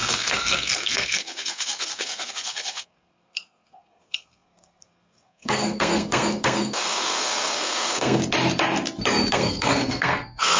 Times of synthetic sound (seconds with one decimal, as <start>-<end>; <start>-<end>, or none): 0.0-8.2; 9.3-10.6